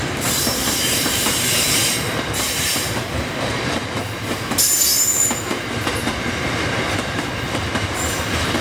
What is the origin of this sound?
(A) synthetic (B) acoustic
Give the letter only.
A